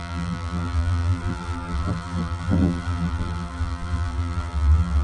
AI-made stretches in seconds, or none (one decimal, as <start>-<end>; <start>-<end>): 0.0-5.0